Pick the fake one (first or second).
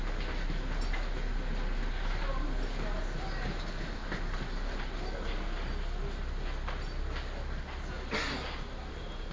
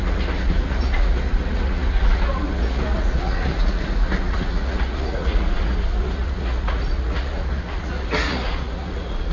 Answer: second